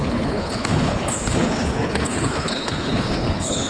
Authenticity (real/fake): fake